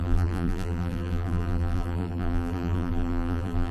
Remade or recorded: remade